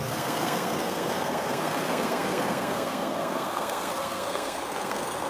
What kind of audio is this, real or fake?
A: fake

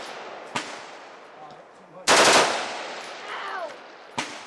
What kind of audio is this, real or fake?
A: real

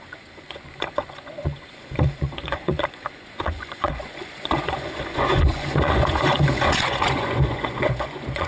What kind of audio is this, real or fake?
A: fake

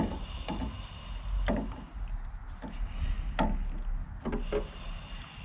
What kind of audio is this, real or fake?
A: real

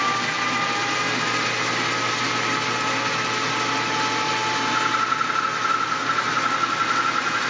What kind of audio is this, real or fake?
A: real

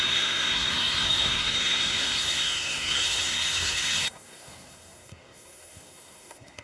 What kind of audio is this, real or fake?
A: fake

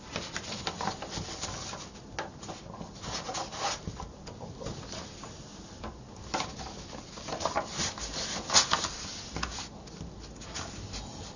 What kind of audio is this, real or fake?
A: real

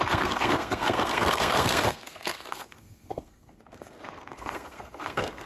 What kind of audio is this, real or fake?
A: fake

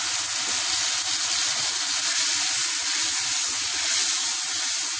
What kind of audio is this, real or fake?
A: real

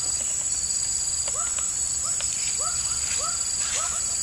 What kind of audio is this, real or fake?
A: real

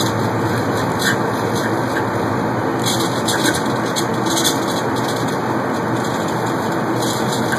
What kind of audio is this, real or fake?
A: real